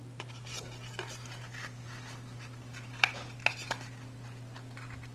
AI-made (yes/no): no